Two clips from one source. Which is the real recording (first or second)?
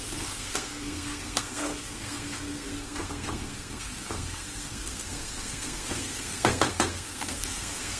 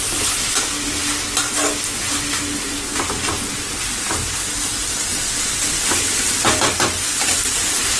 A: second